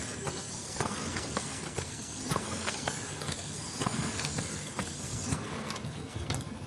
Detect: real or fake fake